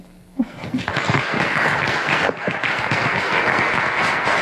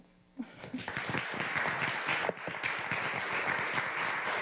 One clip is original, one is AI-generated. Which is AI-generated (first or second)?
first